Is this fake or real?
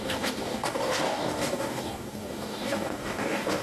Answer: fake